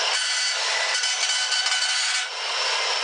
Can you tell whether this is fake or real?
real